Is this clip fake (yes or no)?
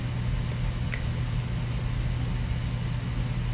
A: no